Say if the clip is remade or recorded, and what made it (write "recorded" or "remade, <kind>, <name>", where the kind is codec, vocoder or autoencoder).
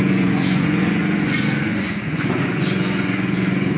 remade, vocoder, Vocos